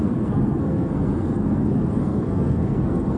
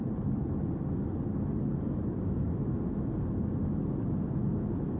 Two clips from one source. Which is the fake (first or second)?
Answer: first